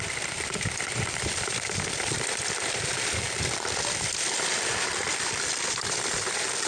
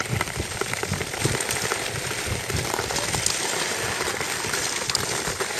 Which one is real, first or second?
second